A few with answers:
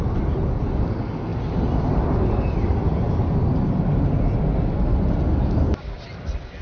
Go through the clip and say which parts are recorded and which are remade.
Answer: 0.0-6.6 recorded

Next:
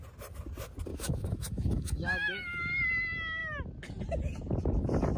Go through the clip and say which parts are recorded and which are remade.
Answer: 0.0-0.9 recorded; 0.9-2.9 remade; 2.9-5.2 recorded

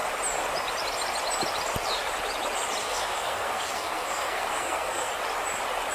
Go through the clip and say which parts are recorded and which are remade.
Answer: 0.0-2.8 recorded; 2.8-5.1 remade; 5.1-5.9 recorded